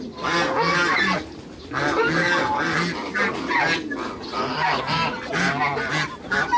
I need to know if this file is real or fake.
real